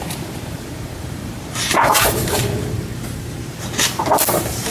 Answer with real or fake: fake